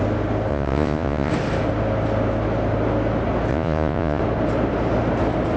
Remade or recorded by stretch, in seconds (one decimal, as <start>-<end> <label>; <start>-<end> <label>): 0.0-0.5 recorded; 0.5-1.3 remade; 1.3-3.5 recorded; 3.5-4.2 remade; 4.2-5.6 recorded